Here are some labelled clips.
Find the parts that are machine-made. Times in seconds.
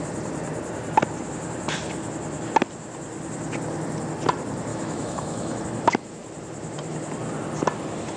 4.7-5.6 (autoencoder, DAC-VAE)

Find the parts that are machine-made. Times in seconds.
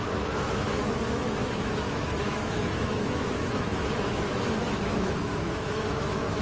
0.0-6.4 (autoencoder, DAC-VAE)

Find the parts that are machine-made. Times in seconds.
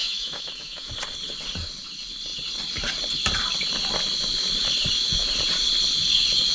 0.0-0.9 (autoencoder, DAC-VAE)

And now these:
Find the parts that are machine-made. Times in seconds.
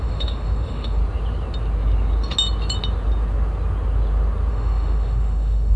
0.0-1.0 (autoencoder, DAC-VAE); 4.5-5.8